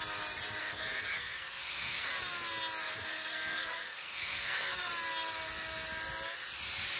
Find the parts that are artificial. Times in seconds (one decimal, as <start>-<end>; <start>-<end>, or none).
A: 0.6-2.1; 2.8-4.9